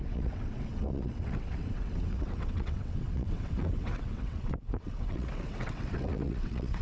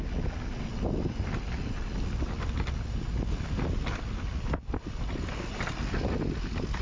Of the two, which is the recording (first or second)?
second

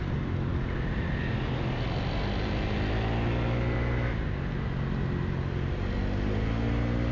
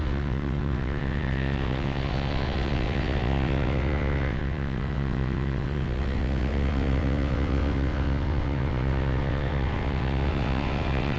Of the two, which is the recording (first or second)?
first